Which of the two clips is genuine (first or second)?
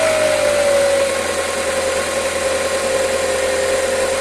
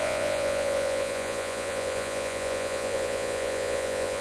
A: first